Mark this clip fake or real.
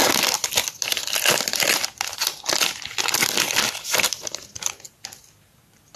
real